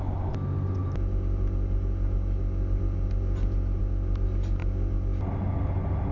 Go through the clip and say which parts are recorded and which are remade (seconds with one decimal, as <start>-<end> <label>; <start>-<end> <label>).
0.0-6.1 recorded